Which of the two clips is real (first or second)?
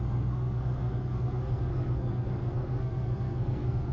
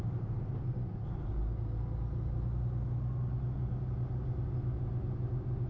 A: second